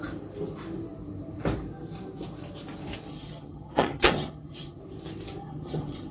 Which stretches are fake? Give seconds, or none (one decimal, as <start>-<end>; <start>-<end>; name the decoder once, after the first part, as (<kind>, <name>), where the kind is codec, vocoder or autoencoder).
3.1-4.8 (vocoder, HiFi-GAN); 5.4-6.1